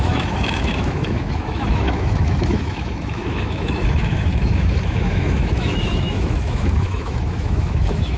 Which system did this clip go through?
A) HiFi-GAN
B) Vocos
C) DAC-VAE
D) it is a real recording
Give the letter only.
C